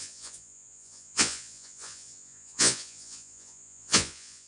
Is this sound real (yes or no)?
no